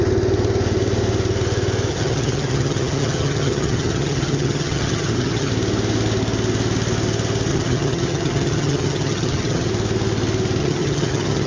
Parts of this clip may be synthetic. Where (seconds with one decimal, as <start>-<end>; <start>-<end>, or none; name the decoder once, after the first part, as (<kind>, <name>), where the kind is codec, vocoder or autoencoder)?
1.9-5.5 (vocoder, HiFi-GAN); 7.5-9.7; 10.6-11.5